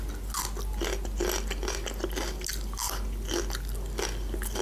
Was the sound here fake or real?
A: real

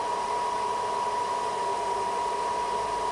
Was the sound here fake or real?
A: real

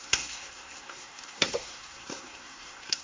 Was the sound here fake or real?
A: fake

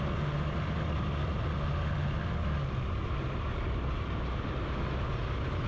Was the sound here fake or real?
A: real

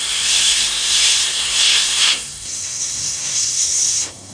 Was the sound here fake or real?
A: fake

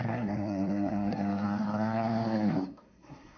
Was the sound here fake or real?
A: fake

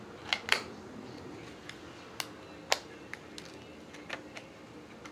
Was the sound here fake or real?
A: real